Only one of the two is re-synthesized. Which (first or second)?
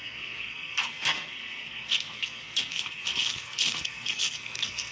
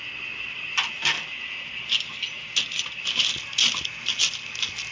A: first